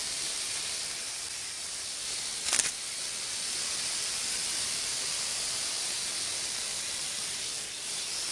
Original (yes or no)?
yes